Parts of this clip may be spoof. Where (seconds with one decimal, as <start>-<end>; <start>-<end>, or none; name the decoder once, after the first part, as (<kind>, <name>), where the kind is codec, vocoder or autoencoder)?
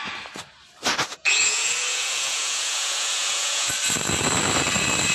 1.1-3.7 (vocoder, Vocos)